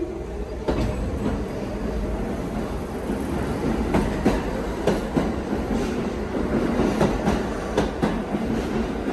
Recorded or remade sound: recorded